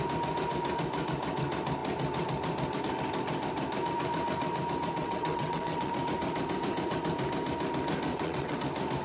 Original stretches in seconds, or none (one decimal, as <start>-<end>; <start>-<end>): 0.0-5.0; 5.9-8.1; 8.6-9.0